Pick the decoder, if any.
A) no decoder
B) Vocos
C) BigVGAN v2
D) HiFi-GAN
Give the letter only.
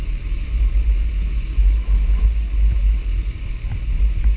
A